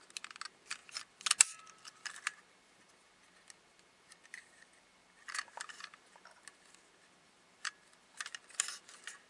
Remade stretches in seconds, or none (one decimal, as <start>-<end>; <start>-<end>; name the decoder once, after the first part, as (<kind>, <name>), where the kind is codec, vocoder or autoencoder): none